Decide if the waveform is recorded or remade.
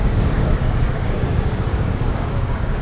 remade